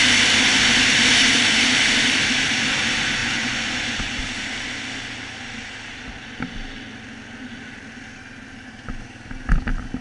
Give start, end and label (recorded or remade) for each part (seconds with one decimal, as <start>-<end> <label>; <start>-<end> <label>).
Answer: 0.0-3.2 recorded; 3.2-4.2 remade; 4.2-10.0 recorded

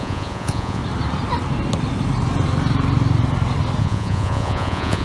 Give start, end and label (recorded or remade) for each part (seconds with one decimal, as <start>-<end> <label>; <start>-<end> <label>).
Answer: 0.0-0.8 remade; 0.8-3.8 recorded; 3.8-5.0 remade